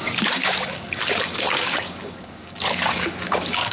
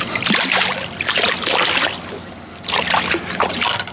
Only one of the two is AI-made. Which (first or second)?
first